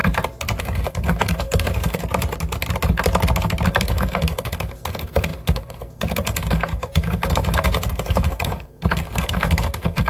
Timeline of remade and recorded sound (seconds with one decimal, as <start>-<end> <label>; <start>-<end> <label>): 0.0-0.6 recorded; 0.6-2.0 remade; 2.0-3.7 recorded; 3.7-10.1 remade

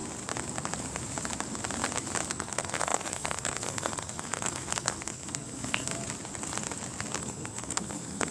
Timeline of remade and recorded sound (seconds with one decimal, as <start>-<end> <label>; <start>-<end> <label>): 0.0-2.3 recorded; 2.3-5.9 remade; 5.9-7.2 recorded; 7.2-8.3 remade

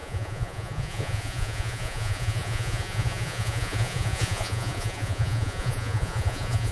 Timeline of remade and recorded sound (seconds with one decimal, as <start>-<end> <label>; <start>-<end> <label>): 0.0-6.7 remade